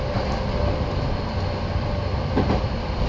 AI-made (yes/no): no